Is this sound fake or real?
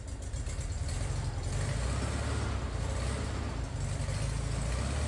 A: real